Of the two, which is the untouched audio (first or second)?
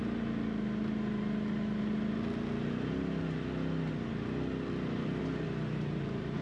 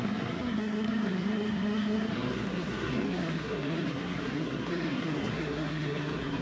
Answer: first